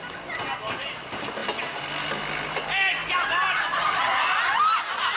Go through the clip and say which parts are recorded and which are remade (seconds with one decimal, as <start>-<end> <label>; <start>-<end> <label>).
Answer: 0.0-5.2 recorded